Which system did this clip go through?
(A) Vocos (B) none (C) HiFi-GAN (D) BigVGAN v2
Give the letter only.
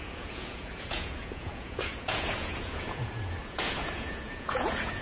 A